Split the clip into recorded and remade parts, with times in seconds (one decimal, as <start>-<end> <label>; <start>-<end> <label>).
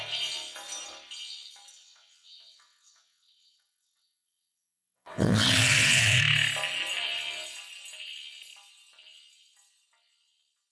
0.0-1.7 recorded; 1.7-6.2 remade; 6.2-10.7 recorded